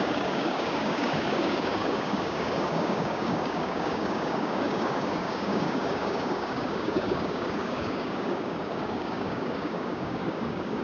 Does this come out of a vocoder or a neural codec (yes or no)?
yes